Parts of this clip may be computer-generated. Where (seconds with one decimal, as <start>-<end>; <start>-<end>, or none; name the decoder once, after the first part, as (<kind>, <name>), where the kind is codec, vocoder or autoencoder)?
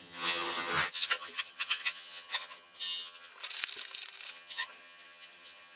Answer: 0.0-3.3 (vocoder, HiFi-GAN); 4.3-5.8